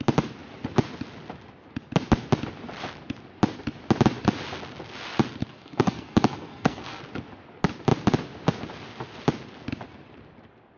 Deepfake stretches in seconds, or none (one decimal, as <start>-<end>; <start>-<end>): 5.4-7.0